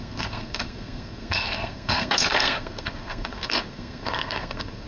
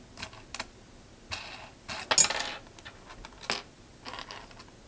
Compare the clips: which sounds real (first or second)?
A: second